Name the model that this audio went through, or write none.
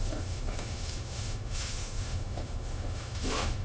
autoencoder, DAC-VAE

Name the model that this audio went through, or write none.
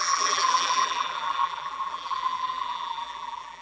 vocoder, BigVGAN v2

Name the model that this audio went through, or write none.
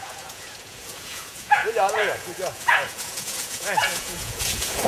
vocoder, Vocos